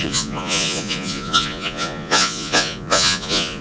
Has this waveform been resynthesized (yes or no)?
yes